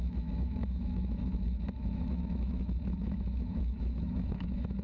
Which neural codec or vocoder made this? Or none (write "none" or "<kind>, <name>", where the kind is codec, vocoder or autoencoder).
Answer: autoencoder, DAC-VAE